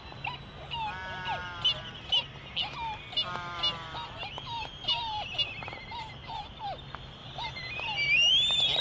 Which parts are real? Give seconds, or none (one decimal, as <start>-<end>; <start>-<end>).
0.0-4.2; 5.5-7.2; 8.3-8.8